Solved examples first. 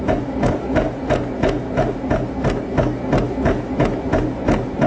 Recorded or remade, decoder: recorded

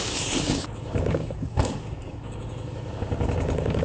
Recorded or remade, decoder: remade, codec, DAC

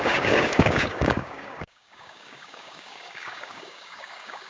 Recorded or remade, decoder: remade, codec, DAC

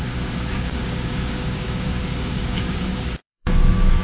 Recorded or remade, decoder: remade, codec, DAC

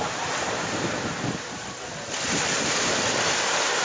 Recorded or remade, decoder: recorded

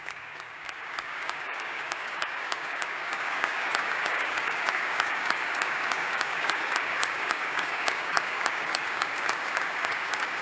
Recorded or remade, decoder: remade, codec, DAC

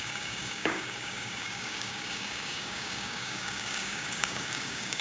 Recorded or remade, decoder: remade, codec, DAC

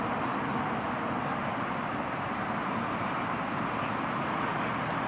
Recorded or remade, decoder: recorded